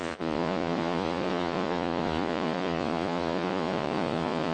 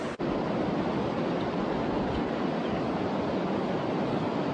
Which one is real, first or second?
second